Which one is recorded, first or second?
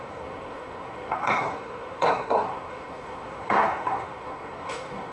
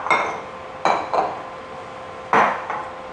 second